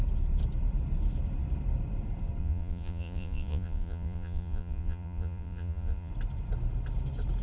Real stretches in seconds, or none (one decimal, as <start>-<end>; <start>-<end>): 0.0-2.4; 6.1-7.4